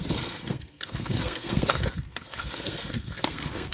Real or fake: fake